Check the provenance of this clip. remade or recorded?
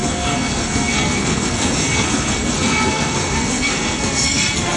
remade